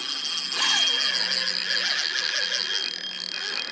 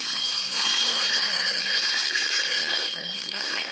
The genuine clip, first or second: first